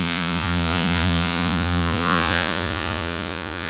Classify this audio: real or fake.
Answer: fake